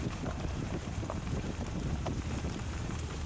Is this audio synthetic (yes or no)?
yes